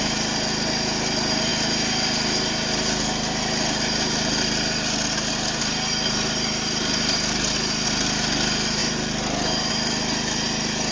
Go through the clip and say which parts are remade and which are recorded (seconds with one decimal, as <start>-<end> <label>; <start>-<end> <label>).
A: 0.0-10.9 recorded